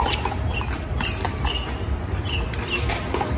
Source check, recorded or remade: recorded